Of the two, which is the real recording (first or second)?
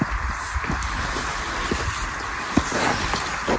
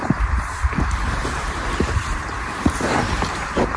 first